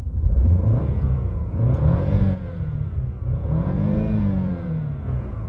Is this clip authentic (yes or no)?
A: no